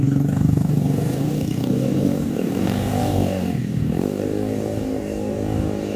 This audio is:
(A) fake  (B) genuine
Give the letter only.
A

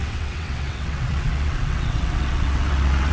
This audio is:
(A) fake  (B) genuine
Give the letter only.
A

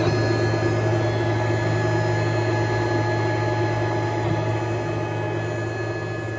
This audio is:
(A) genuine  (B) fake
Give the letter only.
A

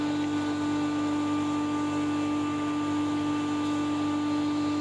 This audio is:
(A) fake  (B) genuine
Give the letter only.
B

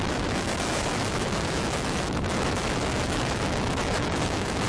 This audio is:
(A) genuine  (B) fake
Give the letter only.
B